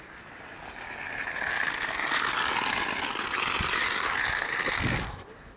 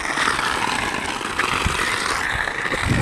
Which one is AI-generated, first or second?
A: second